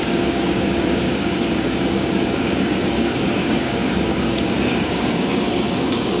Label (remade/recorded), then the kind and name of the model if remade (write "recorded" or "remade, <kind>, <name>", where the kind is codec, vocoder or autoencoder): remade, codec, DAC